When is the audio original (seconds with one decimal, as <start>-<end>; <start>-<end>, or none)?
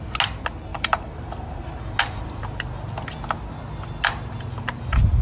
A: 0.0-0.7; 1.8-5.2